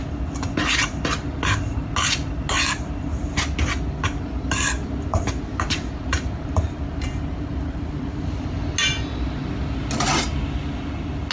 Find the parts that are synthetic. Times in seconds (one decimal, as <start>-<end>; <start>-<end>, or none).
5.1-8.3